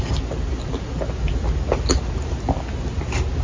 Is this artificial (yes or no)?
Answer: no